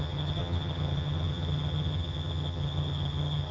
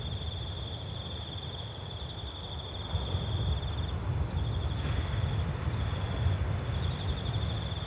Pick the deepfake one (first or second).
first